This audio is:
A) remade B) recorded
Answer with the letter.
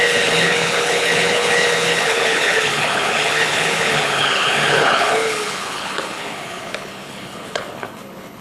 A